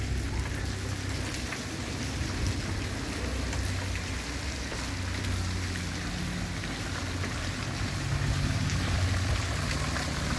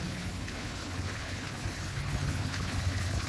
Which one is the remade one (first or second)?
second